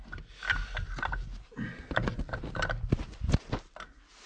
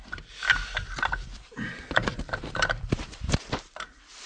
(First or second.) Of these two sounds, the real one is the first